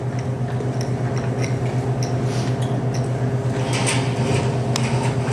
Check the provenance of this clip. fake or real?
real